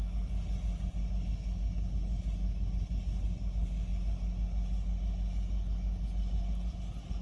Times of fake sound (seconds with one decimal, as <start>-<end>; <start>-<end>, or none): none